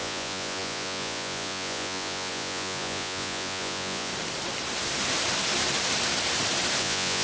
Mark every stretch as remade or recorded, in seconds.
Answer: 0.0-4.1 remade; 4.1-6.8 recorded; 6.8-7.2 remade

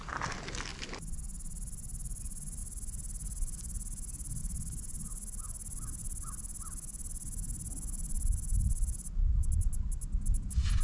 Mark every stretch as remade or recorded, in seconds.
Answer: 0.0-10.8 recorded